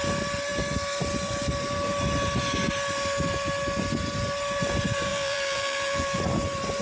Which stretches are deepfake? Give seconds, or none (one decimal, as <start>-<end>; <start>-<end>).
5.1-6.2